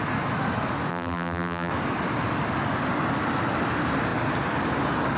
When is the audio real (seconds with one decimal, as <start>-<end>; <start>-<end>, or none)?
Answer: 0.0-0.9; 1.7-5.2